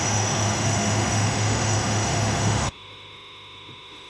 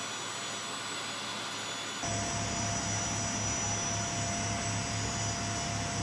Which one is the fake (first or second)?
first